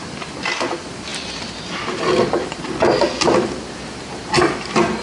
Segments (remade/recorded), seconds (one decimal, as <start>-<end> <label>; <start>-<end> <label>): 0.0-5.0 recorded